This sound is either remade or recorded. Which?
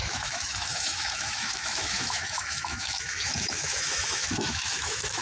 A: remade